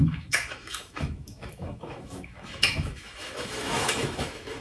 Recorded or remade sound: remade